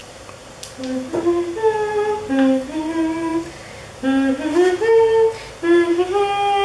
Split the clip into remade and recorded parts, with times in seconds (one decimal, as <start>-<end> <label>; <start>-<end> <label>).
0.0-6.6 recorded